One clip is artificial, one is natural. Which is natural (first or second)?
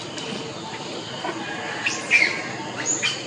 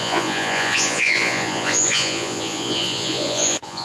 first